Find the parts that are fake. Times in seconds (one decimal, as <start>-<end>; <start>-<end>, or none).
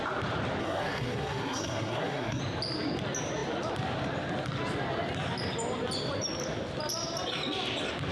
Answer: 0.6-2.4